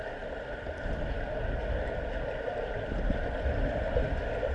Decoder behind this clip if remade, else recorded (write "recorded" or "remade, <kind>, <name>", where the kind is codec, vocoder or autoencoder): recorded